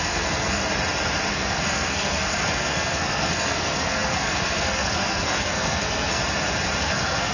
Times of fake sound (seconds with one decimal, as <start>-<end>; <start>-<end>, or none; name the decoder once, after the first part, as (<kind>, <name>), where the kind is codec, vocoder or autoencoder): 0.0-0.6 (codec, SNAC); 1.3-6.2; 6.8-7.3